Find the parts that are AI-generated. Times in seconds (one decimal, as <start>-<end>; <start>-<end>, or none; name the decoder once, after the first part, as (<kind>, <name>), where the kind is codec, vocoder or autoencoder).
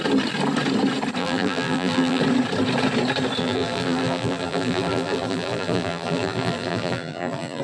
1.2-2.2 (vocoder, BigVGAN v2); 3.4-7.6